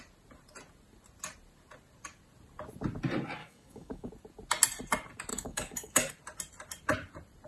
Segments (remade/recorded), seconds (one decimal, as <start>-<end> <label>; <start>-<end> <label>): 0.0-3.4 recorded; 3.4-4.1 remade; 4.1-5.3 recorded; 5.3-6.1 remade; 6.1-7.5 recorded